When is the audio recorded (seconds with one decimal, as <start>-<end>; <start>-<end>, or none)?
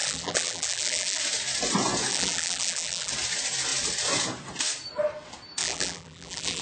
1.2-2.1; 3.1-5.6